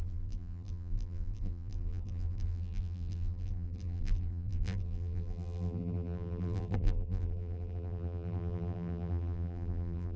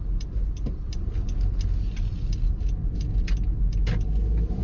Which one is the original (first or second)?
second